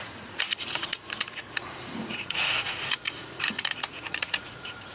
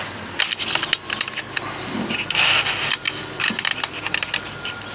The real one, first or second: second